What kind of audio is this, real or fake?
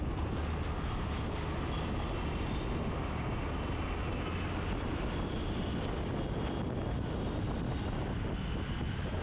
real